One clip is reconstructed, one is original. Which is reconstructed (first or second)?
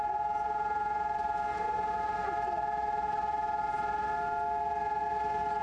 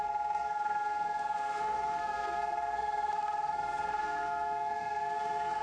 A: second